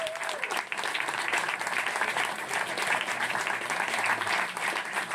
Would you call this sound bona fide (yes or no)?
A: yes